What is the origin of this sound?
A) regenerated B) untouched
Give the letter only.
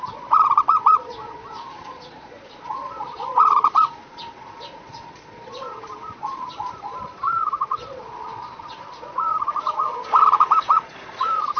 A